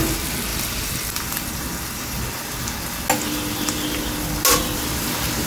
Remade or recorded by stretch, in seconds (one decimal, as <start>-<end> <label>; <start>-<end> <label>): 0.0-0.5 recorded; 0.5-2.2 remade; 2.2-5.5 recorded